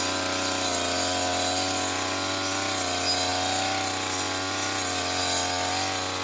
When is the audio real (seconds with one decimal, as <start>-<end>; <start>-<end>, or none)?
0.0-6.2